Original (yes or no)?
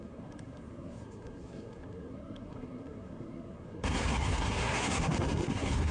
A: no